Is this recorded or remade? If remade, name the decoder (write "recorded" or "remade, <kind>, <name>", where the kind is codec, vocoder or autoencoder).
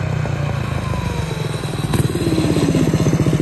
recorded